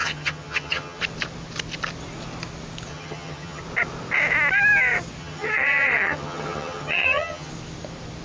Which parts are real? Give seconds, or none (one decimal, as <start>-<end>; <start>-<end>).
1.0-2.9; 3.6-5.2; 7.5-8.2